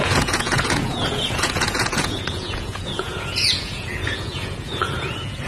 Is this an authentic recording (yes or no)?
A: no